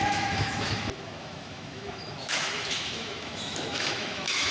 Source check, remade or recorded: remade